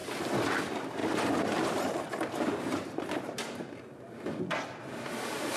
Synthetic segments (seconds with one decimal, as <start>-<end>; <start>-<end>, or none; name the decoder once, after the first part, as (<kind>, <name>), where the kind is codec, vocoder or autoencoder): 0.0-0.6 (vocoder, BigVGAN v2); 1.0-4.4

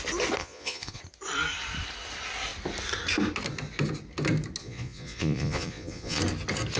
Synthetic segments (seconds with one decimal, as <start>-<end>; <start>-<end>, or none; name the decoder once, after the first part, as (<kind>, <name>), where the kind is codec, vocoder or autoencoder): 0.4-1.0 (vocoder, Vocos); 4.6-6.2

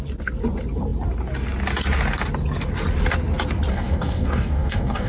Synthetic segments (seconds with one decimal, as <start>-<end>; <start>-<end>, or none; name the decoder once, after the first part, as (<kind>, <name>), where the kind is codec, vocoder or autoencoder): 3.7-5.1 (codec, DAC)

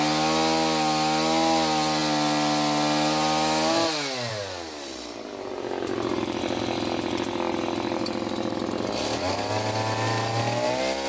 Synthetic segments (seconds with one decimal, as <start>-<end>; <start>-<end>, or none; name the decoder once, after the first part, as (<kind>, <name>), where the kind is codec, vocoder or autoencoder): none

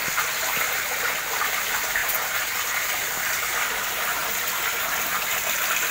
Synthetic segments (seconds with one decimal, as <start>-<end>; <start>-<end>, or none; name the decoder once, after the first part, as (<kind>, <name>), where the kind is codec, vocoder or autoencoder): 1.6-2.0 (vocoder, BigVGAN v2); 2.8-4.2

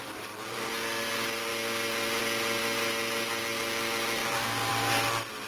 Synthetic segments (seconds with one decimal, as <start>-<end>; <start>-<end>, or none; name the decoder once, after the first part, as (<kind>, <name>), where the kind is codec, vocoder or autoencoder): 0.0-1.5 (vocoder, BigVGAN v2); 3.6-4.2; 4.7-5.5

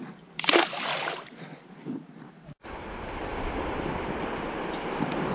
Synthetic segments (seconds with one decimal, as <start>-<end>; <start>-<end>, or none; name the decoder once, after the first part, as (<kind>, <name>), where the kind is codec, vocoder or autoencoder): 0.0-5.3 (vocoder, BigVGAN v2)